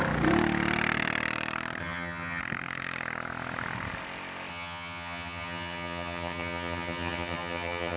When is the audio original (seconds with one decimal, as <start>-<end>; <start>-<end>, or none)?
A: 0.0-1.8; 2.4-4.5